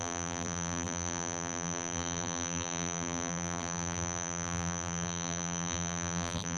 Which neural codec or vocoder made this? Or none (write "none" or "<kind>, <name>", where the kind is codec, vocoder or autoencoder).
vocoder, BigVGAN v2